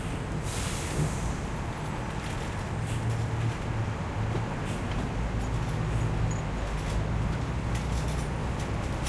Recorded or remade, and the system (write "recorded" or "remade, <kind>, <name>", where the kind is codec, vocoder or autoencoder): recorded